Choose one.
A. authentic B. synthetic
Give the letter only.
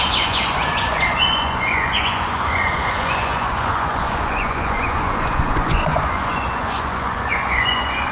B